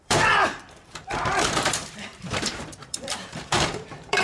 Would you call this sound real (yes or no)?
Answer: no